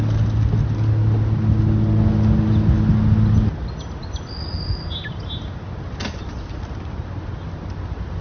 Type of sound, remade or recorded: recorded